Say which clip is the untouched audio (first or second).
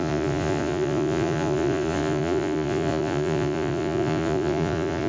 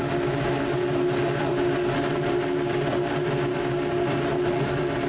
second